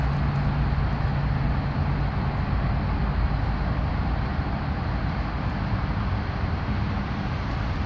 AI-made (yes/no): no